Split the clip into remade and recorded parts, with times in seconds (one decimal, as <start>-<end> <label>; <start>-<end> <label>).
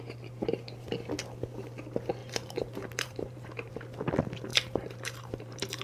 0.0-2.2 recorded; 2.2-3.7 remade; 3.7-4.5 recorded; 4.5-5.8 remade